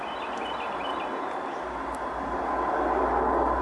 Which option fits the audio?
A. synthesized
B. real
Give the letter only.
B